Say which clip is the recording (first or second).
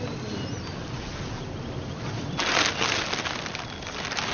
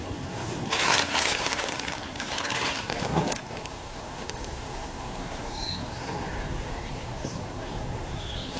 first